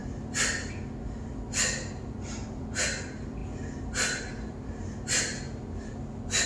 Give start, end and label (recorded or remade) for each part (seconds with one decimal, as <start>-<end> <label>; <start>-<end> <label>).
0.0-6.5 recorded